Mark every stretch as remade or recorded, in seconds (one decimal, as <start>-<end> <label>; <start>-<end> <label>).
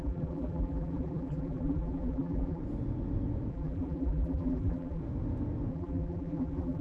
0.0-2.6 remade; 2.6-3.5 recorded; 3.5-5.0 remade; 5.0-5.7 recorded; 5.7-6.8 remade